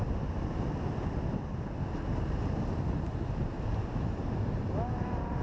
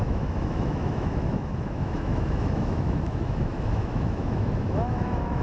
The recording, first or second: first